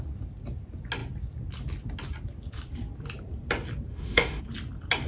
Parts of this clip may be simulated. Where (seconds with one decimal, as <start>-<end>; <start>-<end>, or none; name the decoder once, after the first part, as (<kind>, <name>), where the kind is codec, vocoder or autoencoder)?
3.9-4.4 (autoencoder, DAC-VAE)